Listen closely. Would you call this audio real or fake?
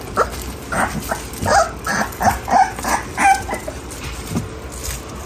real